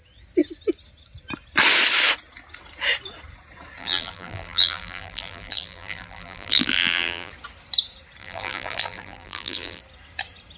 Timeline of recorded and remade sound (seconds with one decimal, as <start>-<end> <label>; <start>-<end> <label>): 0.0-3.8 recorded; 3.8-7.3 remade; 7.3-8.2 recorded; 8.2-9.8 remade; 9.8-10.6 recorded